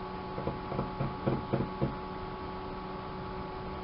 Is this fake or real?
real